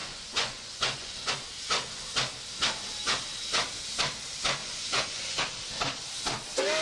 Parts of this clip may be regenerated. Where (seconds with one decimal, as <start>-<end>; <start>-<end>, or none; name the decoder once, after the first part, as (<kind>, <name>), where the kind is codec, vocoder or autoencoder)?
0.0-1.3 (vocoder, Vocos); 4.6-5.4